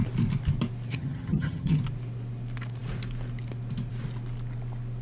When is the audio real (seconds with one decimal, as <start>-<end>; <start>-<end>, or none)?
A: 0.0-0.9; 1.8-5.0